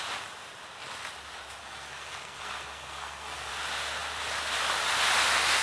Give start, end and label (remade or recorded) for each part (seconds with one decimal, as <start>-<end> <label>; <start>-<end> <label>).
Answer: 0.0-1.6 recorded; 1.6-3.5 remade; 3.5-5.6 recorded